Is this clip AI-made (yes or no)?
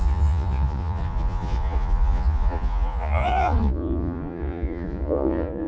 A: yes